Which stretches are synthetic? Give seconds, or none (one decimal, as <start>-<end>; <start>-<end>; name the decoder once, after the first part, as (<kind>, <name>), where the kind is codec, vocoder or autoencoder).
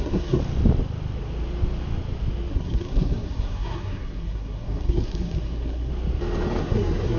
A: 0.0-0.4 (codec, SNAC); 2.5-5.9; 6.6-7.2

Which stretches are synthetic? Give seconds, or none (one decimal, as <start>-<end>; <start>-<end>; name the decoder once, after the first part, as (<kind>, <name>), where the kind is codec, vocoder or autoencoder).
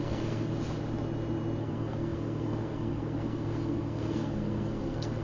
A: 0.0-0.5 (codec, SNAC); 1.6-5.2